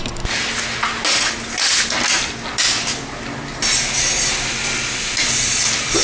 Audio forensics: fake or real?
real